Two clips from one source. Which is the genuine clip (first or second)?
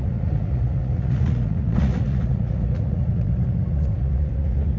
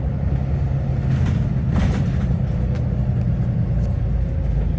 second